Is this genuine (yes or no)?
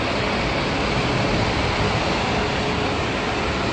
yes